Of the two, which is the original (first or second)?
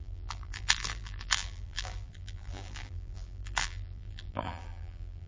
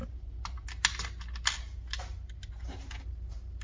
second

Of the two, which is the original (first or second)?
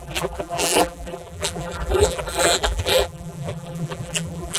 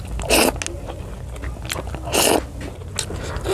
second